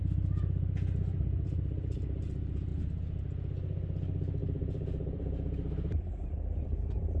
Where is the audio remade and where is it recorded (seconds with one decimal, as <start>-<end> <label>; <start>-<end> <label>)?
0.0-4.4 recorded; 4.4-7.2 remade